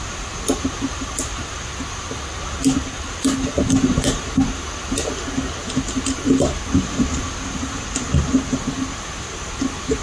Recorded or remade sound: recorded